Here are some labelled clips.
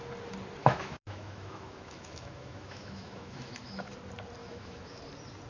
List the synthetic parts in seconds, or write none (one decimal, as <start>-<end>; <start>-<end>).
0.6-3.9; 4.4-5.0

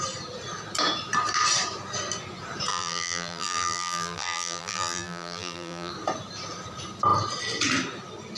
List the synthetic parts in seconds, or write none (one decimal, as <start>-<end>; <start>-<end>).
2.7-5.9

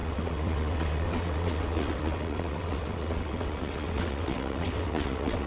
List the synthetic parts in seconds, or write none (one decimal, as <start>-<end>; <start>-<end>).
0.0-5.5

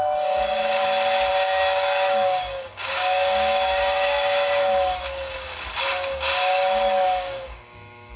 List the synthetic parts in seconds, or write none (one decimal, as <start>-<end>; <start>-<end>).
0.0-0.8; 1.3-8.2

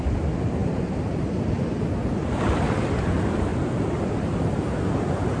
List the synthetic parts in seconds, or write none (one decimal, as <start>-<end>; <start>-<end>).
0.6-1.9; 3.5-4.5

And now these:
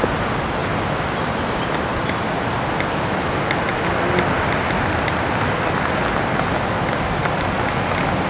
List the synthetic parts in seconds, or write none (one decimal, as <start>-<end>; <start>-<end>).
none

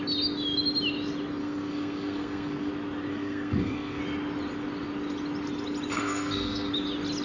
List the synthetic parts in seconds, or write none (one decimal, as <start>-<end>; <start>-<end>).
1.4-2.7; 3.1-4.0; 5.9-6.7

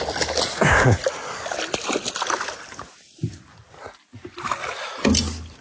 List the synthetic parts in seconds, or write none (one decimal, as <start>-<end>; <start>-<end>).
0.5-1.0